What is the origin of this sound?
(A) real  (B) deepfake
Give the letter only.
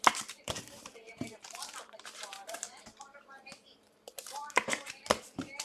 B